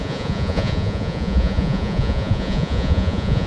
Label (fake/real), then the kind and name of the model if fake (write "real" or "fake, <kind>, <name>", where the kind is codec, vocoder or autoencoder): fake, vocoder, Vocos